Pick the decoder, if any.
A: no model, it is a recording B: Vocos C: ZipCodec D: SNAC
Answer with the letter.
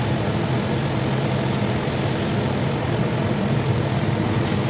A